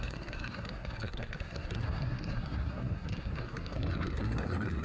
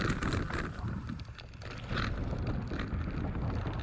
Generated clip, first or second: first